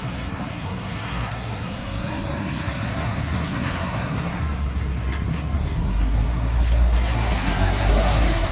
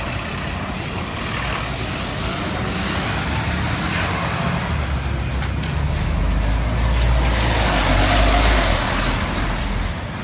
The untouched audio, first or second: second